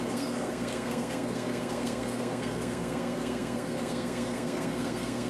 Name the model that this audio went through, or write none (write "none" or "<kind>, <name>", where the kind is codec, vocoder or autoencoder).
codec, SNAC